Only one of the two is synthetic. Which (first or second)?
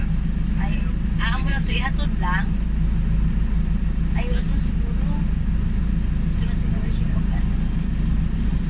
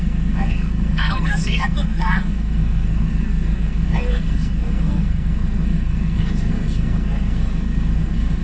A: second